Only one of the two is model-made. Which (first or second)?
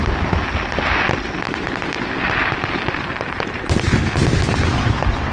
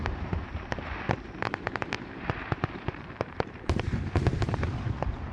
second